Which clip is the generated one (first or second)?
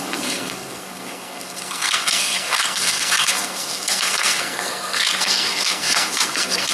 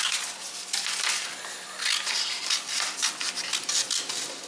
first